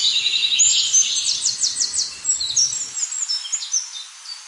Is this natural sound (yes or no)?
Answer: yes